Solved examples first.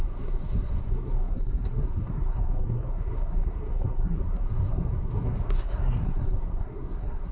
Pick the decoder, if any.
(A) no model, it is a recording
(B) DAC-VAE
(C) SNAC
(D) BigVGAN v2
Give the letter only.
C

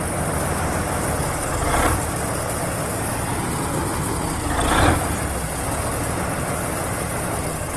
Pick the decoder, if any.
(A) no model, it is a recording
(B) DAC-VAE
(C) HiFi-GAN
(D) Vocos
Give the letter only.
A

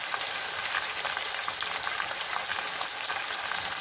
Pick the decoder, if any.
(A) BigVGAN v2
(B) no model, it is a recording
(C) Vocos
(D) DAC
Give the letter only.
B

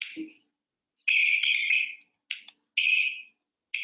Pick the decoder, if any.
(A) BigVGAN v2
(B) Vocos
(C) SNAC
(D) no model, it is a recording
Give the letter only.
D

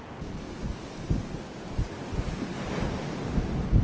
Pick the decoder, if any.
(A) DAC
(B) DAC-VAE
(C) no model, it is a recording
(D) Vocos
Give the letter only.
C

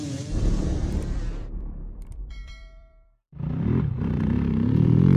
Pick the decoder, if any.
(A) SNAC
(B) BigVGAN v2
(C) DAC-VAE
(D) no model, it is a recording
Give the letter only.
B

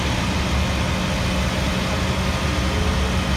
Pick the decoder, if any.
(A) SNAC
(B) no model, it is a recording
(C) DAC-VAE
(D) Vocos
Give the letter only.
B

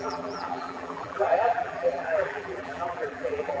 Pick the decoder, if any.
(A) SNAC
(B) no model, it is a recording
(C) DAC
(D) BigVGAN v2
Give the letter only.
D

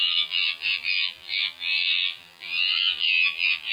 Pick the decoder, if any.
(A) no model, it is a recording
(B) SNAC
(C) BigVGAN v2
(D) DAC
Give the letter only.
C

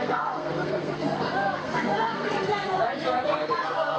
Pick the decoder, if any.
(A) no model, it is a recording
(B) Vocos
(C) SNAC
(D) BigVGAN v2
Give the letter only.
C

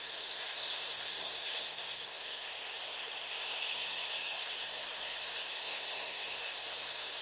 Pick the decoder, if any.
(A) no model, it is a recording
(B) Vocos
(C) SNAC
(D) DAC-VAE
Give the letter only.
C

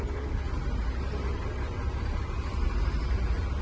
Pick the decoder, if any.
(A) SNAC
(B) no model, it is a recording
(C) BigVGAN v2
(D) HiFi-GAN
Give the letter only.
B